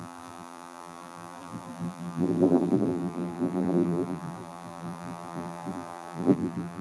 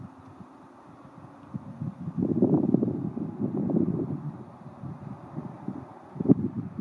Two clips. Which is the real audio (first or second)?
second